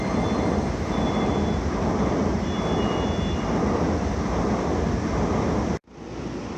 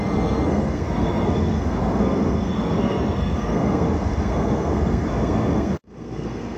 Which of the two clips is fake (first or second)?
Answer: second